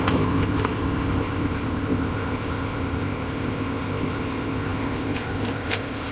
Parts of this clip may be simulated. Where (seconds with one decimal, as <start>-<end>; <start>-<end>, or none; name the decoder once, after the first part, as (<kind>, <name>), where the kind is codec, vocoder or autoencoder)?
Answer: 0.0-6.1 (codec, ZipCodec)